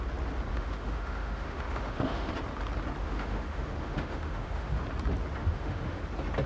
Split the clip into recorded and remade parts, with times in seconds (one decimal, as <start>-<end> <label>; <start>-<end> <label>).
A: 0.0-0.5 recorded; 0.5-2.3 remade; 2.3-3.0 recorded; 3.0-4.8 remade; 4.8-5.4 recorded; 5.4-6.0 remade; 6.0-6.5 recorded